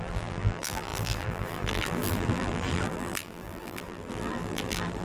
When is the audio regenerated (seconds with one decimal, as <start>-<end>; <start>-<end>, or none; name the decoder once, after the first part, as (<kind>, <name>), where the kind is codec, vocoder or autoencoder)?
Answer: 0.0-5.0 (vocoder, BigVGAN v2)